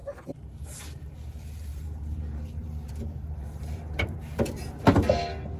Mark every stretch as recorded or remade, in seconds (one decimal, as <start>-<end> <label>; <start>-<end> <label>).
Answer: 0.0-1.7 recorded; 1.7-4.7 remade; 4.7-5.6 recorded